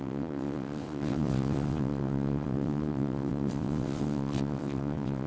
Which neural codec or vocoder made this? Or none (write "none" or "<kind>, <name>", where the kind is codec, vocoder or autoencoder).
vocoder, WaveNeXt